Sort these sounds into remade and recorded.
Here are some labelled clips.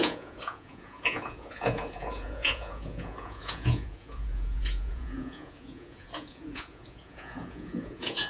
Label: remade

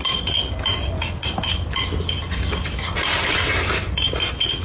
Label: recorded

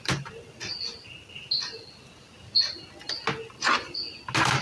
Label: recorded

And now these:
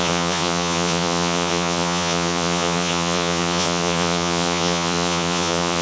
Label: remade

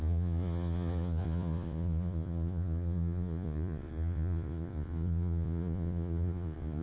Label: remade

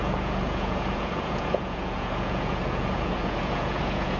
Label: remade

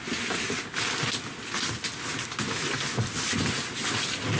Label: recorded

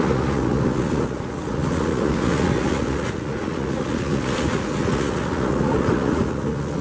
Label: remade